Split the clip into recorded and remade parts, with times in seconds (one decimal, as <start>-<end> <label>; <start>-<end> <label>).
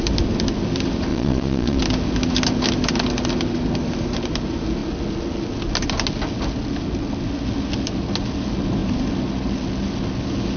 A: 0.0-1.1 recorded; 1.1-1.8 remade; 1.8-10.6 recorded